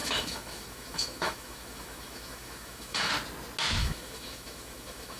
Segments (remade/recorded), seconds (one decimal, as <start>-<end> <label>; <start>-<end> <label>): 0.0-3.1 remade; 3.1-3.8 recorded; 3.8-5.2 remade